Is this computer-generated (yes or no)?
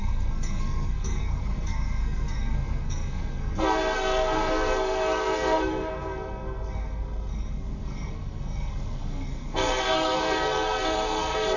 yes